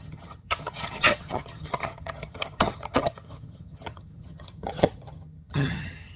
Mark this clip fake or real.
fake